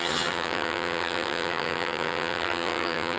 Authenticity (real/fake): fake